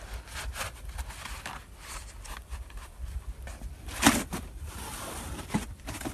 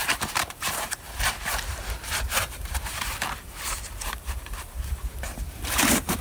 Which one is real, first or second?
first